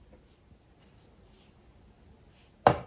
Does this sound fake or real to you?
real